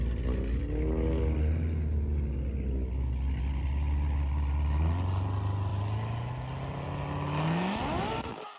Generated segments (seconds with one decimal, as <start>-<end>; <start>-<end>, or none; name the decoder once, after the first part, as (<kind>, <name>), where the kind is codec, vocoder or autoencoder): none